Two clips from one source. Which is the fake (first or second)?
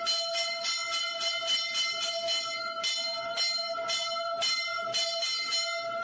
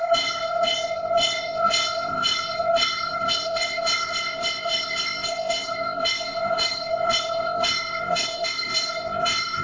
second